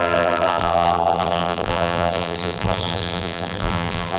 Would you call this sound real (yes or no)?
no